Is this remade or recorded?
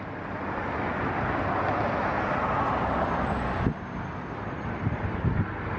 recorded